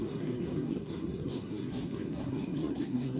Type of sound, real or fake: fake